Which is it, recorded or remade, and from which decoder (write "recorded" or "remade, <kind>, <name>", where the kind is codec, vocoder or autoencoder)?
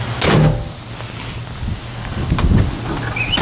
recorded